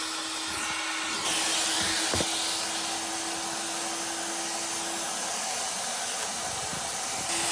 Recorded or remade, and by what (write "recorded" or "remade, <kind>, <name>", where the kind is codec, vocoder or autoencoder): recorded